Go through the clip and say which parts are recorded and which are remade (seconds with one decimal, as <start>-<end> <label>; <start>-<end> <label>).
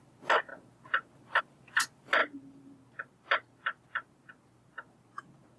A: 0.0-5.6 recorded